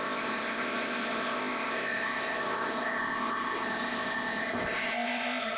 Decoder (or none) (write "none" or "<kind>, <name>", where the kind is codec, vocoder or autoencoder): codec, ZipCodec